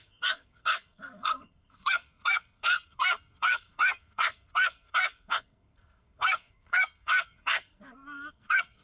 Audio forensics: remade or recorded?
remade